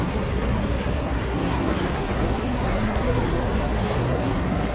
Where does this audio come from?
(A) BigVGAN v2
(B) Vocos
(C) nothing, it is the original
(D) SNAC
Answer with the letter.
D